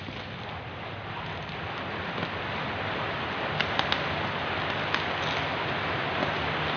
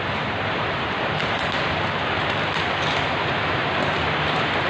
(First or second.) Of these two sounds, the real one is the first